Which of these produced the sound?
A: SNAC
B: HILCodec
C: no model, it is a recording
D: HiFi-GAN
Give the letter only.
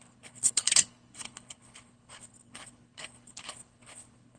B